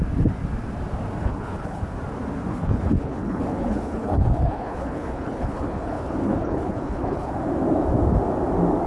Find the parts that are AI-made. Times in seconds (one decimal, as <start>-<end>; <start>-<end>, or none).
1.2-1.8; 2.5-7.3